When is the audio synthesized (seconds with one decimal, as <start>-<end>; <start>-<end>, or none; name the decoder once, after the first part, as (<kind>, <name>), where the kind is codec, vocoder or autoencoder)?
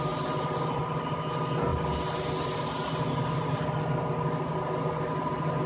1.7-3.8 (vocoder, BigVGAN v2)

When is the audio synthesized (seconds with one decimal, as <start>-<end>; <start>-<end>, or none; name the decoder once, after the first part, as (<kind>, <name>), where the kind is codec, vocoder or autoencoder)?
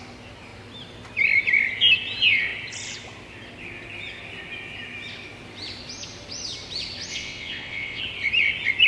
7.1-8.0 (vocoder, WaveNeXt)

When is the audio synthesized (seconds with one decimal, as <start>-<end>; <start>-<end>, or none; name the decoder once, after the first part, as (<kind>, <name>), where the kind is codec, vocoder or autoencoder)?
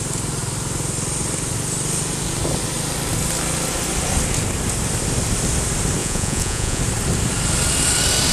6.0-6.8 (vocoder, Vocos)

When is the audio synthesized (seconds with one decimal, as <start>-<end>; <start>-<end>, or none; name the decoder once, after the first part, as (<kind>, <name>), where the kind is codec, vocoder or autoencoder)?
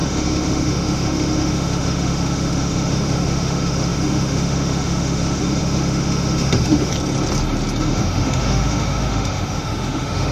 0.0-6.9 (autoencoder, DAC-VAE); 7.8-10.3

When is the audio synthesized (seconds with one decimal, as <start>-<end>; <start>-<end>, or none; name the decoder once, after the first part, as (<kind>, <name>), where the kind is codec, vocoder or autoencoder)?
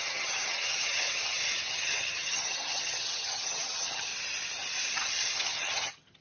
0.0-4.1 (vocoder, HiFi-GAN); 4.9-6.2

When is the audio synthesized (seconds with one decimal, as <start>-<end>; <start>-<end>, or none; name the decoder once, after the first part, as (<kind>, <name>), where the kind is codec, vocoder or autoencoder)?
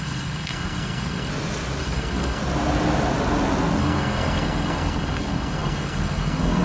0.0-1.3 (codec, SNAC); 1.8-2.4; 3.8-6.6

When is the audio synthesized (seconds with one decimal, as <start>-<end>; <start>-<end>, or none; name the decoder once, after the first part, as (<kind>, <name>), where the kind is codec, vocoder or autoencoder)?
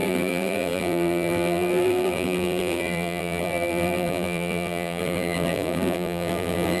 0.0-6.8 (vocoder, BigVGAN v2)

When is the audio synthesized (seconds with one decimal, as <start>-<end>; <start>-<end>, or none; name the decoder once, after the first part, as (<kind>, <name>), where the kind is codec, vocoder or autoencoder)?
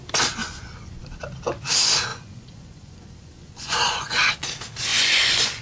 0.4-1.0 (vocoder, Vocos); 2.1-4.3; 4.9-5.6